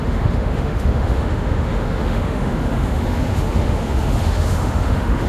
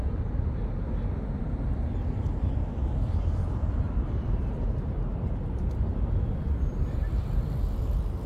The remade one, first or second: first